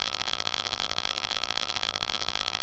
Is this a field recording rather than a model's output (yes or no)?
no